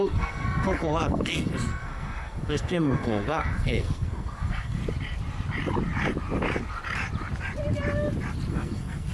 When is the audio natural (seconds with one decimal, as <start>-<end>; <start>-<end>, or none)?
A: 4.8-8.5